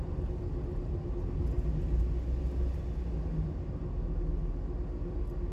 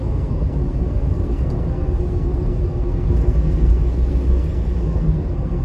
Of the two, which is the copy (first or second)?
second